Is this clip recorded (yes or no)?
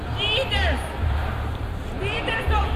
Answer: no